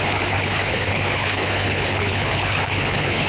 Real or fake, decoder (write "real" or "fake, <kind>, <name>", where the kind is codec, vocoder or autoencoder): fake, codec, HILCodec